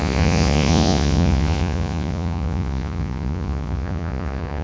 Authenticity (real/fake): fake